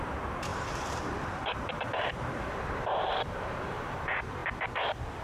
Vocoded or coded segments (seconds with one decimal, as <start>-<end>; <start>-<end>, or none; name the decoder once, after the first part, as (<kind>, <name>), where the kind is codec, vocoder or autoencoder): 0.0-4.4 (vocoder, BigVGAN v2)